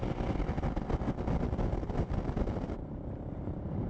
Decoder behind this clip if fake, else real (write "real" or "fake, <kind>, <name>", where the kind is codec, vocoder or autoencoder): real